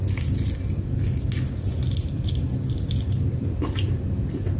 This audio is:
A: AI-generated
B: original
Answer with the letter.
B